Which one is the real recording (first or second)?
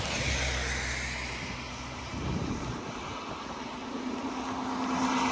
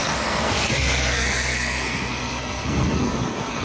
first